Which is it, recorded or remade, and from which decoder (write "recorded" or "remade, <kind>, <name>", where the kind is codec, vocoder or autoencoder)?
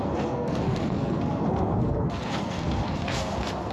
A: remade, codec, SNAC